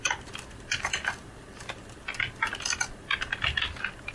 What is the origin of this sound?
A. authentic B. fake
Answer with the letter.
A